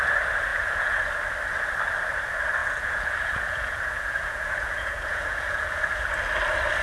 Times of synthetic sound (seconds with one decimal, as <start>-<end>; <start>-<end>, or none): 0.5-1.0; 2.6-6.0

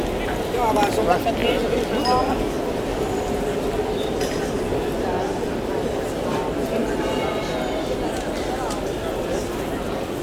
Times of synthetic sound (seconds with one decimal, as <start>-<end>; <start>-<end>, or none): 1.4-5.7

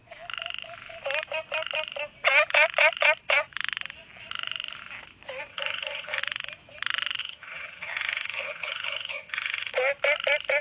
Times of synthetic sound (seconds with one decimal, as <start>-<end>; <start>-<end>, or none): 5.5-6.2; 7.2-9.7

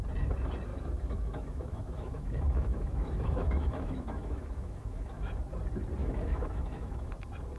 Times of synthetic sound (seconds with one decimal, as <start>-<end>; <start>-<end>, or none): 0.7-5.3; 6.0-7.1

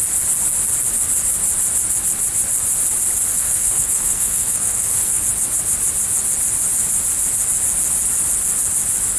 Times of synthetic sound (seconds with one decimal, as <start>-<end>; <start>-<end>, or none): 3.3-5.2

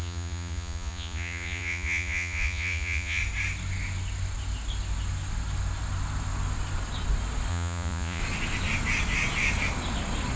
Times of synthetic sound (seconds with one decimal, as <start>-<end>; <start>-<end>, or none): 0.0-3.2; 7.5-8.2